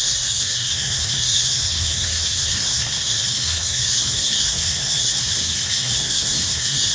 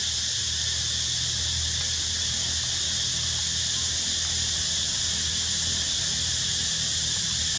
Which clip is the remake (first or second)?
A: first